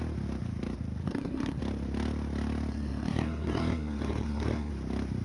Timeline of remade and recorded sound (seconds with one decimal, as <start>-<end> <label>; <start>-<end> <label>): 0.0-1.0 recorded; 1.0-1.6 remade; 1.6-2.7 recorded; 2.7-4.7 remade; 4.7-5.2 recorded